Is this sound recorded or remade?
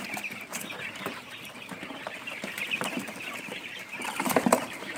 remade